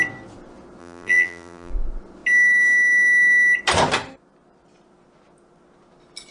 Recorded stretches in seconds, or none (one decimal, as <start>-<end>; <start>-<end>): 0.0-0.8; 1.7-6.3